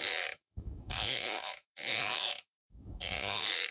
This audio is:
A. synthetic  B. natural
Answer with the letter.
A